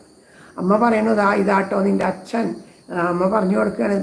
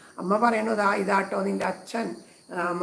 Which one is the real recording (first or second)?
first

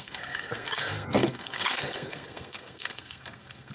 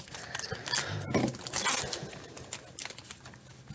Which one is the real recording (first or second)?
second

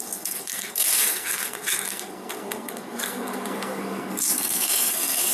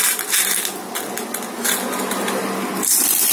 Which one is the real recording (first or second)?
second